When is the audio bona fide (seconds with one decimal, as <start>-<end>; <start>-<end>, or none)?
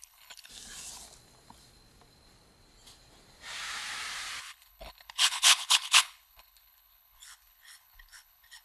0.5-4.4